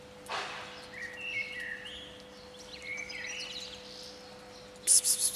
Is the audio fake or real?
real